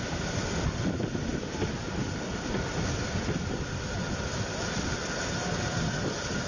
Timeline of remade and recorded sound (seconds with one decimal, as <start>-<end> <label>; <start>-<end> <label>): 0.0-6.5 recorded